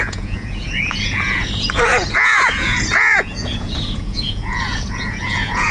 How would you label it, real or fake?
fake